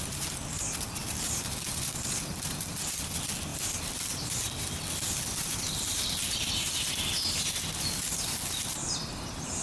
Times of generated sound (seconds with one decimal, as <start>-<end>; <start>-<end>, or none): 3.5-4.5